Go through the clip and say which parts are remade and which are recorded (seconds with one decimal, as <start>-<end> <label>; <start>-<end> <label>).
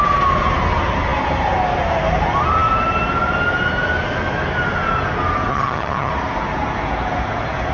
0.0-5.5 recorded; 5.5-6.1 remade; 6.1-7.7 recorded